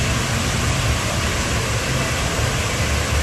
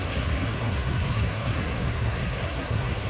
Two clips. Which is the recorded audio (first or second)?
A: first